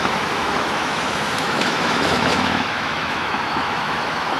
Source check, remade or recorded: remade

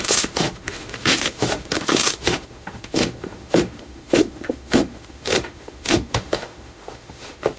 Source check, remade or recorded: remade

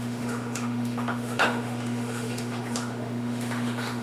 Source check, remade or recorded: remade